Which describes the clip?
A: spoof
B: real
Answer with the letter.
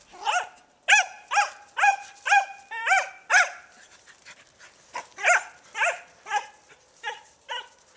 B